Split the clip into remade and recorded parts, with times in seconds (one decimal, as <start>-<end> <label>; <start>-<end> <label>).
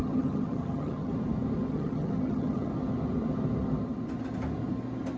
0.0-1.1 remade; 1.1-1.7 recorded; 1.7-2.7 remade; 2.7-5.2 recorded